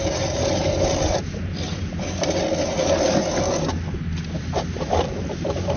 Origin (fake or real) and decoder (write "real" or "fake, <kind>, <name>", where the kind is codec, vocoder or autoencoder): real